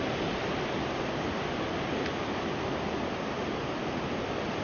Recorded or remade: recorded